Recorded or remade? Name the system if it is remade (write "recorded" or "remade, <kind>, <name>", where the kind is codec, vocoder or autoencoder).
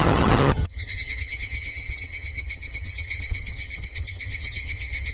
remade, vocoder, HiFi-GAN